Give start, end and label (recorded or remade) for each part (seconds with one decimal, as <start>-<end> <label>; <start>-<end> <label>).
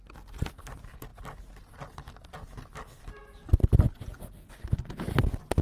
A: 0.0-5.6 recorded